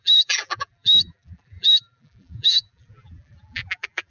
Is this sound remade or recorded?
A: remade